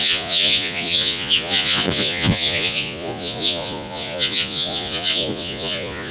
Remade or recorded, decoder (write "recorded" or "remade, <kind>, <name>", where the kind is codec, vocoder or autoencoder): remade, vocoder, Vocos